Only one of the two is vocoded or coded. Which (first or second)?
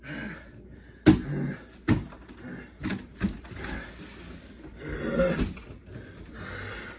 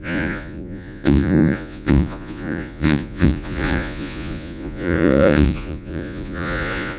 second